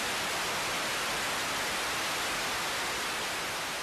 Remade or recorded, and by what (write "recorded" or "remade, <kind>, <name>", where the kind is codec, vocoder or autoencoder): recorded